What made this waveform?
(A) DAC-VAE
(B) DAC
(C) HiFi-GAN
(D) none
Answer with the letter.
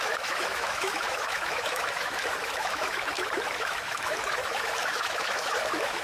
A